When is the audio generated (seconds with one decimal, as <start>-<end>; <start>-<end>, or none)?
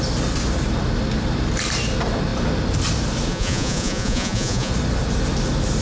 3.3-4.7